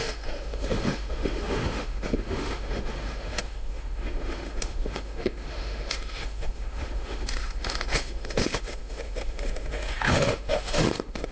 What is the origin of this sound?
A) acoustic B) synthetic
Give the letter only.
B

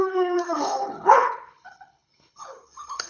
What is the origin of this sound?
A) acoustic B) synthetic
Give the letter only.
B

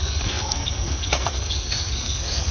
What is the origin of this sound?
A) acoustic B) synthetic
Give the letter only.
B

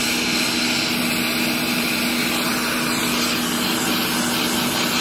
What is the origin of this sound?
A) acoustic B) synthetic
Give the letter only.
A